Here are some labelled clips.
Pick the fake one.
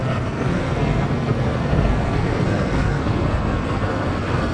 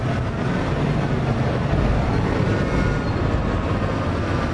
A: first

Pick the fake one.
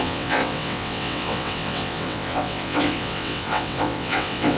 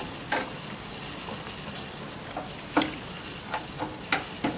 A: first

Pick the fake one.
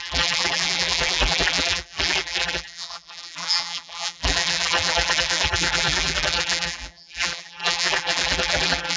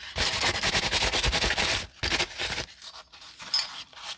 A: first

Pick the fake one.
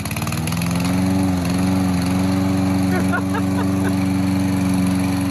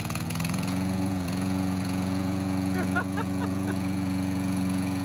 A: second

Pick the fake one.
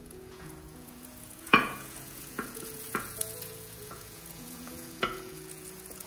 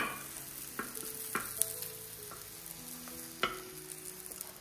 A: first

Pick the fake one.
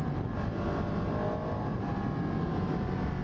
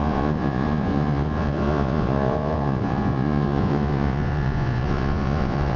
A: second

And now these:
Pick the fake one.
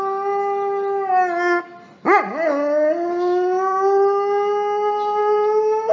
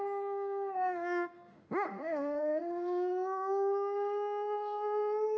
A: second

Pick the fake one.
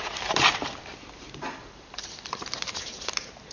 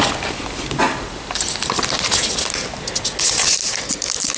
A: first